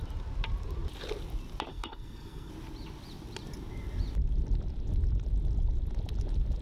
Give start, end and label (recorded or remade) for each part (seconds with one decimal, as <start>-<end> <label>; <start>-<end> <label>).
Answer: 0.0-1.7 recorded; 1.7-2.5 remade; 2.5-6.6 recorded